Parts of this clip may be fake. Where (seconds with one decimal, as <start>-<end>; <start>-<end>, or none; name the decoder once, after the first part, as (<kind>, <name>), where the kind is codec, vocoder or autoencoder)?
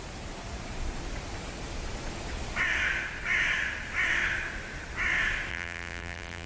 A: 5.5-6.5 (vocoder, BigVGAN v2)